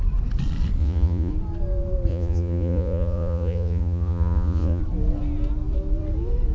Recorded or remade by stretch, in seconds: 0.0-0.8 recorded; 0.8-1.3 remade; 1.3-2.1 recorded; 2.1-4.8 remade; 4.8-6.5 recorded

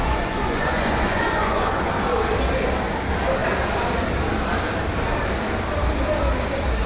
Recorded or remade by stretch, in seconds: 0.0-1.9 remade; 1.9-6.9 recorded